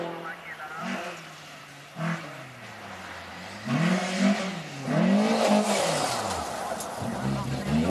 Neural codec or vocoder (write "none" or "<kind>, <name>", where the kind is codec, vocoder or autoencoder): none